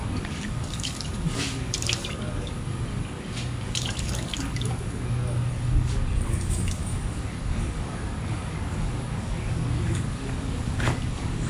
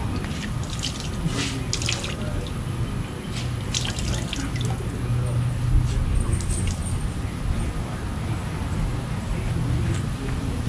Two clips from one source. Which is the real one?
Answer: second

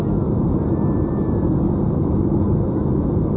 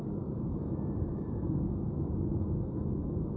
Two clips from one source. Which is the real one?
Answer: first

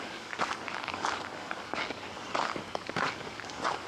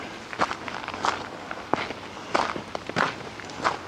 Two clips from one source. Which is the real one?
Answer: second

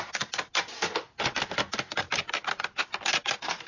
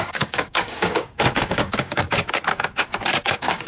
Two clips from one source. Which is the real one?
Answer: first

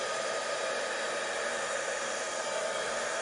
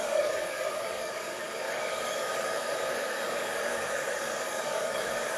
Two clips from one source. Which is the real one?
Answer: first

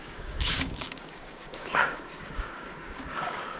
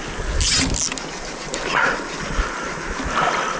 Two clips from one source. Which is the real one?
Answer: second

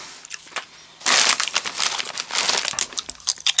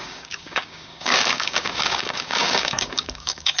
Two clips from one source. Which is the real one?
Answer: first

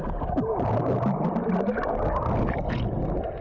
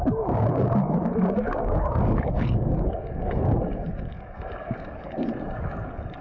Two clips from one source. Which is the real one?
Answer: first